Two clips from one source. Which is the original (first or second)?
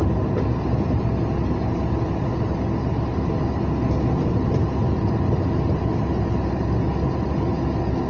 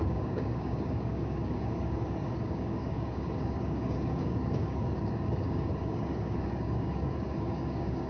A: first